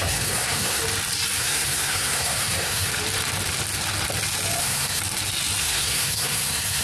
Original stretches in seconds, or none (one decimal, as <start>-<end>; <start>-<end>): 0.8-1.4; 2.9-4.6; 5.0-5.6